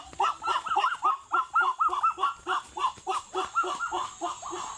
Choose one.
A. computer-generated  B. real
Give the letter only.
B